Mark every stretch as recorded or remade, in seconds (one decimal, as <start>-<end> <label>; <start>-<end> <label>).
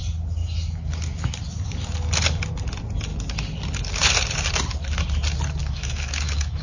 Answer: 0.0-0.4 recorded; 0.4-0.9 remade; 0.9-5.6 recorded; 5.6-6.6 remade